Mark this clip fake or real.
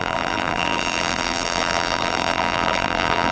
fake